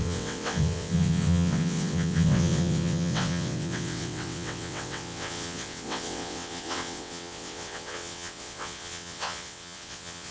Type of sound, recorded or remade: remade